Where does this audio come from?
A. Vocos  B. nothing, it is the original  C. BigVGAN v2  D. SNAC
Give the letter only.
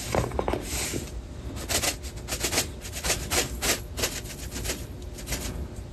B